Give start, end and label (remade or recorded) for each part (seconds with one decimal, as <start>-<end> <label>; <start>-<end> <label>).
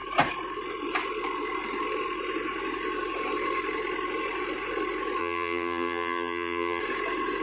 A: 0.0-5.2 recorded; 5.2-6.8 remade; 6.8-7.4 recorded